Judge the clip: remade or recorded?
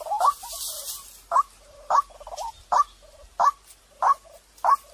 recorded